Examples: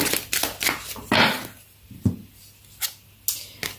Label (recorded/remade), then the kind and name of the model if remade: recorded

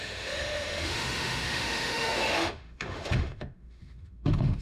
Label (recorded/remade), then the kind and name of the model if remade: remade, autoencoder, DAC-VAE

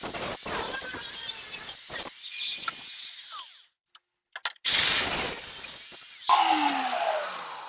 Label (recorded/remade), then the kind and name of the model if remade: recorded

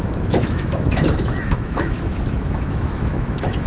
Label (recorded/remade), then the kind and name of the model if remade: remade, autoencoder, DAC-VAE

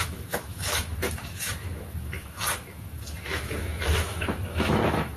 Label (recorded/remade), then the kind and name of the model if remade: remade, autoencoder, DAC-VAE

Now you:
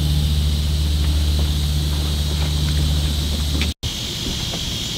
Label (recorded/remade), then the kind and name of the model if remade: recorded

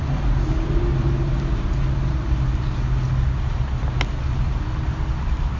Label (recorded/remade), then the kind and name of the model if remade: recorded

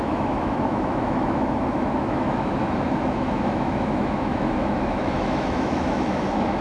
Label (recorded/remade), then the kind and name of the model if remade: remade, autoencoder, DAC-VAE